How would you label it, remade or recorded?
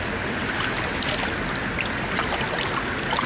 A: recorded